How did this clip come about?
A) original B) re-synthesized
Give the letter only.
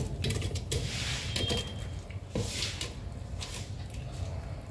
A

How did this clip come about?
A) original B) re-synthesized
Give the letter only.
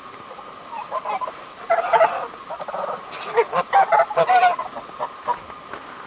A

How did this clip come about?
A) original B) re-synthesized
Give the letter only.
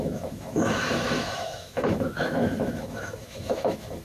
B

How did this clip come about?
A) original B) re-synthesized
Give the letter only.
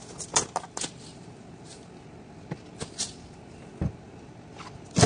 A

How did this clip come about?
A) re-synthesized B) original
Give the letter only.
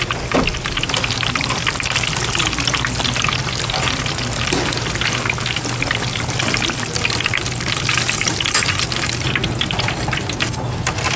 B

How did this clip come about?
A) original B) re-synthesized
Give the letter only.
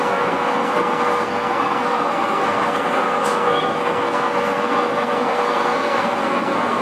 B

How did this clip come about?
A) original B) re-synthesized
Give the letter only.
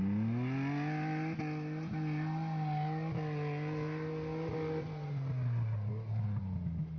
A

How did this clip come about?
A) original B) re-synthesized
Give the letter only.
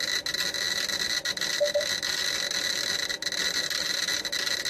A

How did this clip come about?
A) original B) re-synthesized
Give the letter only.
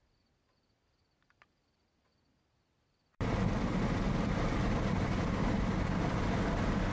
A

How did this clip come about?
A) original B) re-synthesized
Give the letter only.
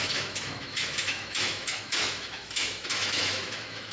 B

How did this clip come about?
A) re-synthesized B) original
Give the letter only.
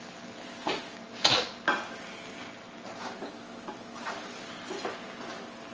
B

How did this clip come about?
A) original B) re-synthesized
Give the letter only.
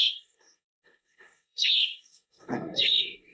B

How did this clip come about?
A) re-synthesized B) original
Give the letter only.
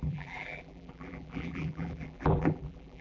A